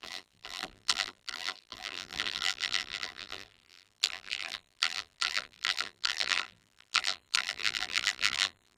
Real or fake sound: fake